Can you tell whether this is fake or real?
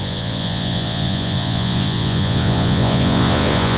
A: fake